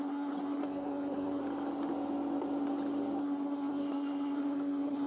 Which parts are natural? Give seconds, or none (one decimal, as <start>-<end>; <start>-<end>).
1.4-3.2